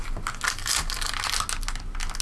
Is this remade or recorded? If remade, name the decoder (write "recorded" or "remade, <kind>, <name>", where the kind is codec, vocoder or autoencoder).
recorded